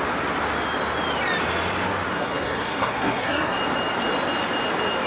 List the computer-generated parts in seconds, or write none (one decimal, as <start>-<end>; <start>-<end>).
2.1-3.6